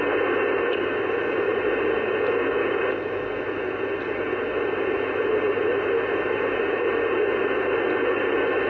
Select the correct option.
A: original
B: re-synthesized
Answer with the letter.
A